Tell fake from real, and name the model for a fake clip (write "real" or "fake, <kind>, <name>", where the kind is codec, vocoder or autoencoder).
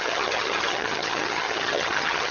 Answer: fake, vocoder, HiFi-GAN